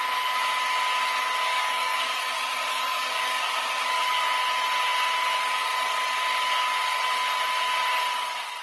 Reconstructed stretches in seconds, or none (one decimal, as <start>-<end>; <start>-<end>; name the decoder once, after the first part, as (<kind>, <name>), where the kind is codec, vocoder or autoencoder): 1.5-2.3 (codec, DAC); 2.7-3.5